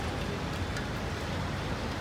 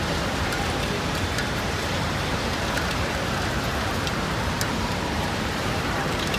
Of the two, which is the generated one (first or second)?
second